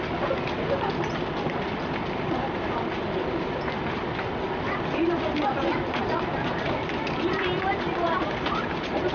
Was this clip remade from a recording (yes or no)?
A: no